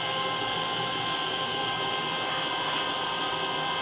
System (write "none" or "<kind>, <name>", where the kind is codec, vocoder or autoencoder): none